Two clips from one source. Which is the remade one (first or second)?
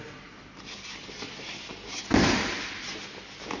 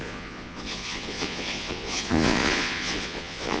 second